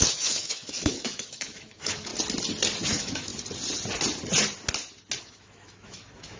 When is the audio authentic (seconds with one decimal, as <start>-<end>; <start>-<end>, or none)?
2.1-2.9; 3.3-5.2